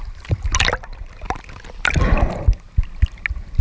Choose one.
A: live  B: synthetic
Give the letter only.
A